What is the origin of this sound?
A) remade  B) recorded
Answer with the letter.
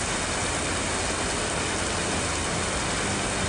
B